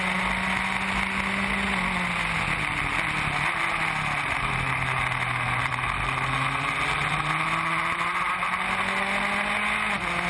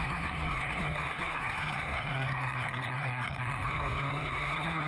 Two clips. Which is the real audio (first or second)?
first